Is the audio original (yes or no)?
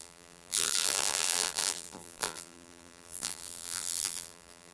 no